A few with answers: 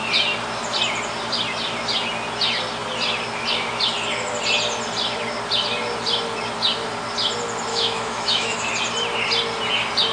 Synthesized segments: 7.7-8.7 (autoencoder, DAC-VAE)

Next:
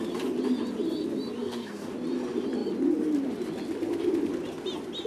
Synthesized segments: 1.4-1.9 (codec, SNAC)

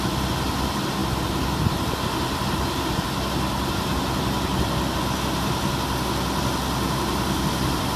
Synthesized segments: none